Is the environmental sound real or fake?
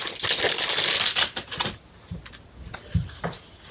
real